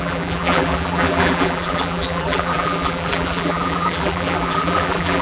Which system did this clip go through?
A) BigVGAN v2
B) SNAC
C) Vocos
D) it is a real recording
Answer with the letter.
A